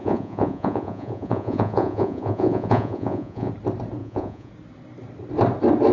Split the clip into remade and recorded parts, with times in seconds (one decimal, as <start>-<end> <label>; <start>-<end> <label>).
0.0-3.5 remade; 3.5-4.0 recorded; 4.0-4.5 remade; 4.5-5.9 recorded